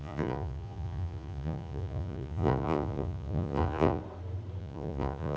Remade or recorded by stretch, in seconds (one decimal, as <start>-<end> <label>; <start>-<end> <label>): 0.0-4.0 remade; 4.0-4.6 recorded; 4.6-5.4 remade